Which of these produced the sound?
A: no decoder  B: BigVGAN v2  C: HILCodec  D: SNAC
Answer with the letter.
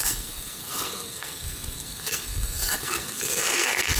D